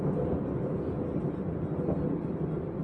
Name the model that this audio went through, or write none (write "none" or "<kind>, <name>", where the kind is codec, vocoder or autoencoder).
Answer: none